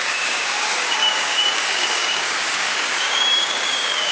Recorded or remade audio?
remade